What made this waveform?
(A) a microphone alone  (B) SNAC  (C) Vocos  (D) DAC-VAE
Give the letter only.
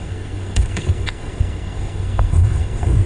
B